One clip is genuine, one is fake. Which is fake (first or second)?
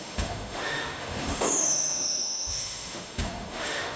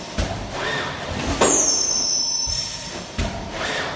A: first